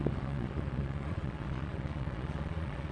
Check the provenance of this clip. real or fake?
fake